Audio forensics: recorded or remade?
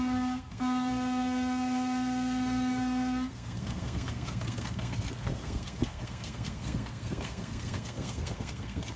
remade